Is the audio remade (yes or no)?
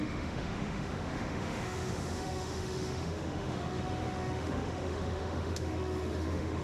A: yes